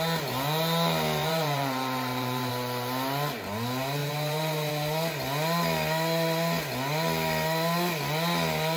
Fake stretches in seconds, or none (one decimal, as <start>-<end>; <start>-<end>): 1.2-2.5; 4.0-4.7